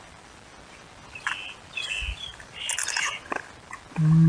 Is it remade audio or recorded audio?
recorded